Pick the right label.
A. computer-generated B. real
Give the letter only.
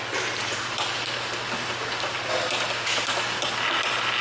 B